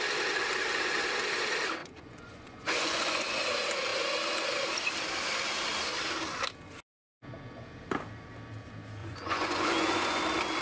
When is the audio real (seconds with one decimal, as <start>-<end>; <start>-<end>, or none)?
0.0-1.8; 3.3-9.0; 10.2-10.6